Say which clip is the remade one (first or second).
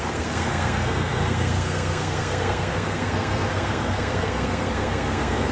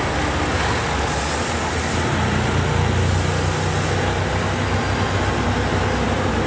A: first